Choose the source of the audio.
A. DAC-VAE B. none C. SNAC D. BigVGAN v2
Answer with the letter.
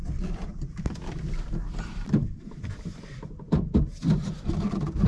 D